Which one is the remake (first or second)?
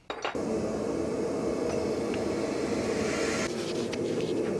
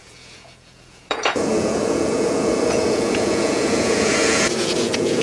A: second